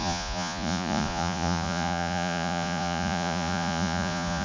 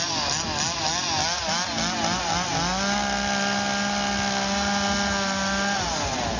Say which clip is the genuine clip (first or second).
second